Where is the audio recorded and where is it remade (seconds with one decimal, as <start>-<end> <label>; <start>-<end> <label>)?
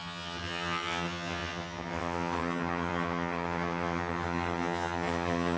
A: 0.0-5.6 remade